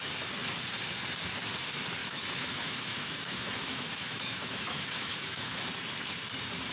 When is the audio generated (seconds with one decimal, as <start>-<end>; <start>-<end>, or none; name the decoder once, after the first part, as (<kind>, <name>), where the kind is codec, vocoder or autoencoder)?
2.0-5.6 (autoencoder, DAC-VAE)